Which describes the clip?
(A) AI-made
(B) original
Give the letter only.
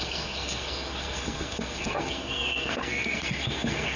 A